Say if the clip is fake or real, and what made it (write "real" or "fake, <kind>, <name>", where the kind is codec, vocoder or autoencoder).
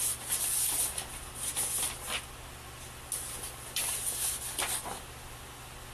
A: real